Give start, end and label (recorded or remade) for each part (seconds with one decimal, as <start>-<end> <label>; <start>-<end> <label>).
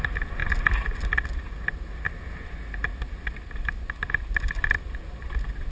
0.0-5.7 recorded